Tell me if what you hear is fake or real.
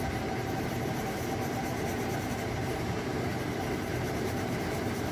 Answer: fake